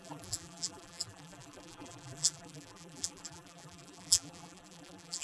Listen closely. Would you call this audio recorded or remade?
remade